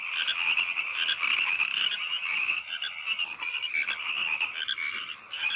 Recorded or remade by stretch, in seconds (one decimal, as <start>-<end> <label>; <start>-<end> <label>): 0.0-5.6 recorded